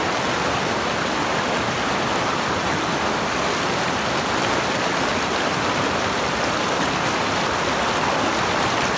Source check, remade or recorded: recorded